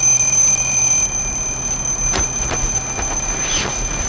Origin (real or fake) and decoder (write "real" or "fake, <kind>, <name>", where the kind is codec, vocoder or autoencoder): real